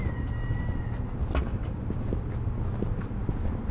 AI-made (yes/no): no